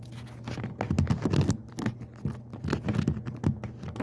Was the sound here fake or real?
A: real